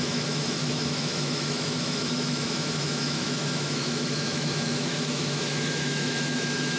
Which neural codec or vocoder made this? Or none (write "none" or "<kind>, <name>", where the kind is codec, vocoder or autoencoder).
autoencoder, DAC-VAE